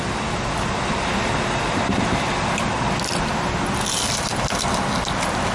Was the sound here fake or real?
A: real